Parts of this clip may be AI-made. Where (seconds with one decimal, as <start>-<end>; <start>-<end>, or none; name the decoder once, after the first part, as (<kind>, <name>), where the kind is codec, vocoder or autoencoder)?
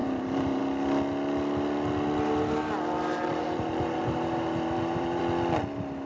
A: 0.0-0.6 (vocoder, BigVGAN v2); 3.1-5.2